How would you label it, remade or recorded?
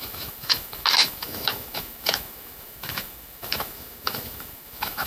remade